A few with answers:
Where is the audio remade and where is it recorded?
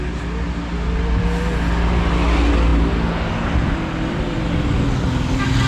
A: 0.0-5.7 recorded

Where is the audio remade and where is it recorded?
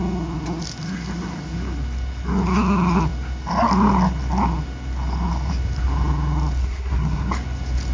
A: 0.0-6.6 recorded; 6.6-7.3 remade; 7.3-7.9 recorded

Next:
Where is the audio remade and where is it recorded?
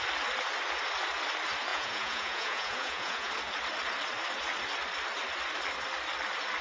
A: 0.0-1.7 recorded; 1.7-3.3 remade; 3.3-6.6 recorded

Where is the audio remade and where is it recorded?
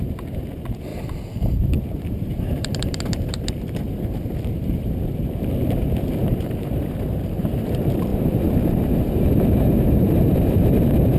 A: 0.0-0.9 remade; 0.9-1.8 recorded; 1.8-11.2 remade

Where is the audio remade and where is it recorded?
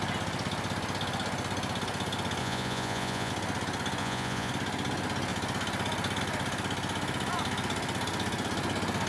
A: 0.0-2.4 recorded; 2.4-3.3 remade; 3.3-4.0 recorded; 4.0-4.5 remade; 4.5-9.1 recorded